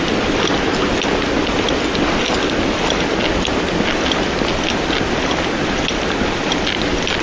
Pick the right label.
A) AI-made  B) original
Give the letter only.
B